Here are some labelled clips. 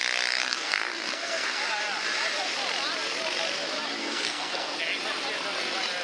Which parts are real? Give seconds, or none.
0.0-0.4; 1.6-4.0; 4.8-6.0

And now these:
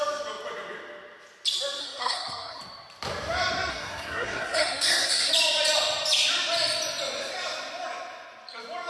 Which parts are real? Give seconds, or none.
0.0-1.8; 2.6-3.7; 5.3-8.9

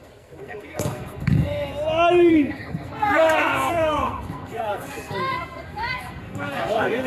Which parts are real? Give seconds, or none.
1.7-2.3